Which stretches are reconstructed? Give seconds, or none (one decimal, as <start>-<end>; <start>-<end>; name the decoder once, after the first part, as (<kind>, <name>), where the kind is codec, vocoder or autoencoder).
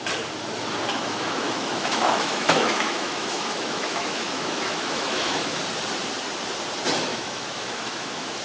0.9-5.6 (autoencoder, DAC-VAE); 7.1-8.4